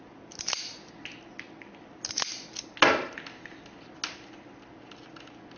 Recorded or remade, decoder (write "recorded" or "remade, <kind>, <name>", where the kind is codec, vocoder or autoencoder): recorded